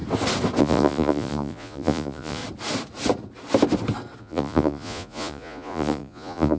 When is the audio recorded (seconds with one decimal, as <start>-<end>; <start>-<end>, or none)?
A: 0.0-0.6; 2.4-4.2